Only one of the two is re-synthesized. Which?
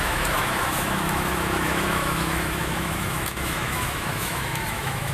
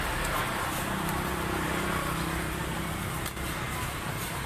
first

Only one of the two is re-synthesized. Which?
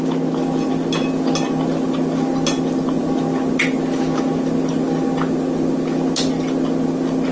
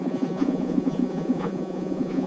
second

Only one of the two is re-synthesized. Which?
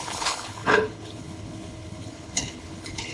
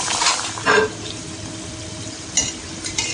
first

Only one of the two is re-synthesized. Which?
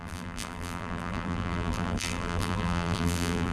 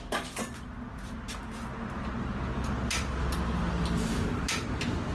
first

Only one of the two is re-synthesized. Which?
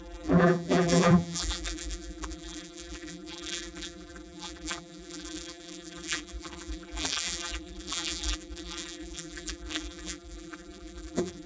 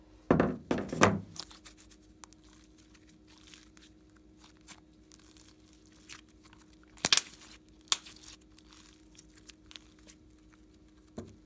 first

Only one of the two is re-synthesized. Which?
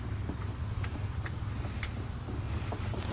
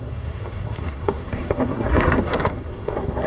second